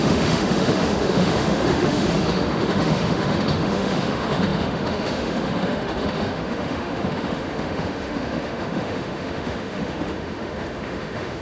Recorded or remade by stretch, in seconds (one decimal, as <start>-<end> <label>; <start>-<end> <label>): 0.0-11.4 remade